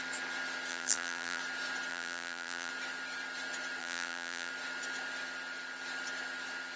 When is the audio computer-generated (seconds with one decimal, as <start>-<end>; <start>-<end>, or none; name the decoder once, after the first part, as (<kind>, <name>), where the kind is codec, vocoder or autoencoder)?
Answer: 0.7-1.4 (vocoder, BigVGAN v2); 1.9-2.7; 3.8-4.5